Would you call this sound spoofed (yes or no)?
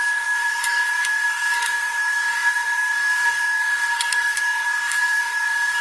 yes